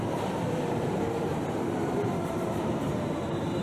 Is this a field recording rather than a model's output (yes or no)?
no